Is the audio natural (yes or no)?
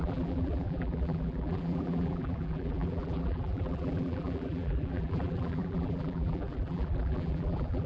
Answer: no